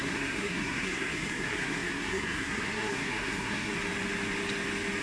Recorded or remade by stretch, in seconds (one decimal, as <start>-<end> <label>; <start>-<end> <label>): 0.0-3.7 remade; 3.7-5.0 recorded

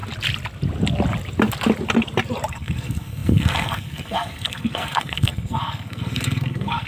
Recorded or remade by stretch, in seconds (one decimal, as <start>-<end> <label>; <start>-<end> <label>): 0.0-2.5 recorded; 2.5-6.9 remade

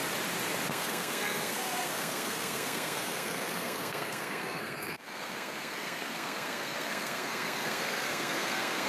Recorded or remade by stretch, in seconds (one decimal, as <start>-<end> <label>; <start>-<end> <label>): 0.0-0.7 recorded; 0.7-8.9 remade

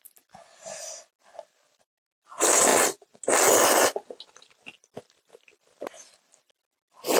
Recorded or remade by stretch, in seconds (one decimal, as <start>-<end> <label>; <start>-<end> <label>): 0.0-7.2 recorded

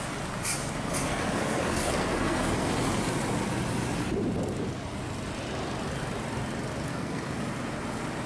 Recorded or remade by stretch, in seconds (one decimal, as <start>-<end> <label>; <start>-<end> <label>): 0.0-1.0 recorded; 1.0-2.7 remade; 2.7-6.9 recorded; 6.9-7.4 remade; 7.4-8.3 recorded

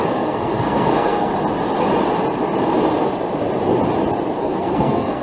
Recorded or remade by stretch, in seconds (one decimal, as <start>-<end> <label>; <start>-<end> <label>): 0.0-1.3 remade; 1.3-4.4 recorded; 4.4-5.2 remade